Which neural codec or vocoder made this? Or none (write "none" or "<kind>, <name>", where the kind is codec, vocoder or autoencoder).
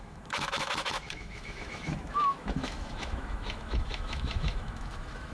autoencoder, DAC-VAE